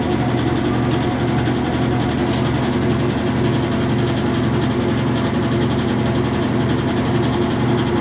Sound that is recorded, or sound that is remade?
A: recorded